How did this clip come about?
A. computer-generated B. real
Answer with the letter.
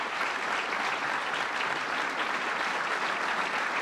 B